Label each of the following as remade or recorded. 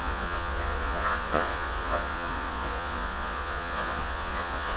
remade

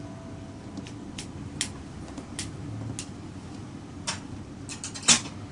recorded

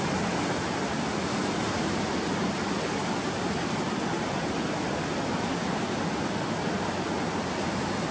recorded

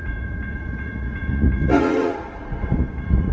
remade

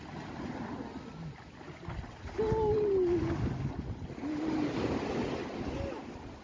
recorded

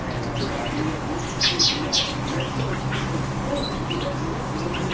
recorded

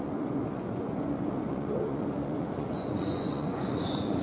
remade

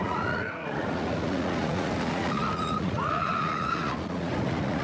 remade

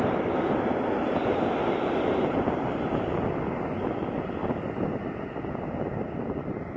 recorded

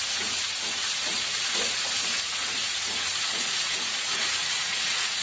remade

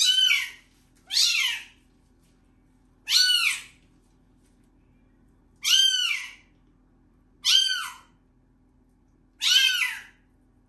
recorded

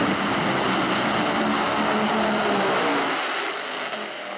recorded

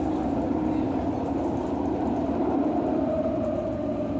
recorded